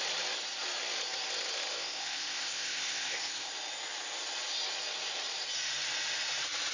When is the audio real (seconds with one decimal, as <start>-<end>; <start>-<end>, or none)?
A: 0.0-1.7; 3.5-6.7